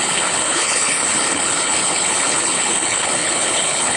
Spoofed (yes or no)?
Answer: yes